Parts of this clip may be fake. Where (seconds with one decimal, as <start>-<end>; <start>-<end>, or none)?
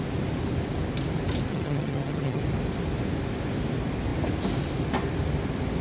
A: 1.5-2.4